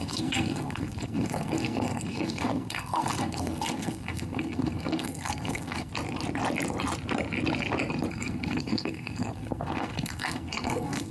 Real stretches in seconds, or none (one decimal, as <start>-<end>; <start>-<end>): 5.9-8.1

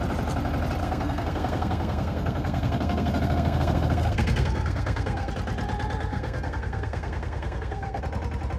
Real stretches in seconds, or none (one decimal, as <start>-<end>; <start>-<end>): 0.0-0.8; 5.3-6.1; 8.0-8.6

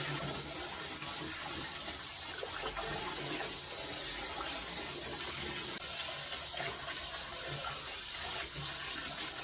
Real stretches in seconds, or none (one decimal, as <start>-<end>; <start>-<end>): 0.0-9.4